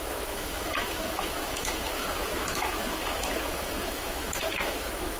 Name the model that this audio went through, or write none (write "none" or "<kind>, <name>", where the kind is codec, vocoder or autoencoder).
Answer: autoencoder, DAC-VAE